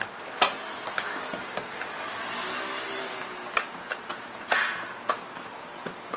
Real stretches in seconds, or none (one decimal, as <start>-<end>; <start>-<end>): 0.0-4.1; 5.1-6.2